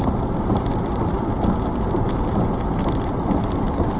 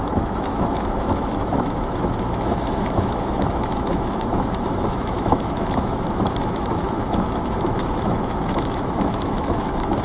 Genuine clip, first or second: first